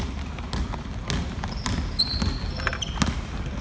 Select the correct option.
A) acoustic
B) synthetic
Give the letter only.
A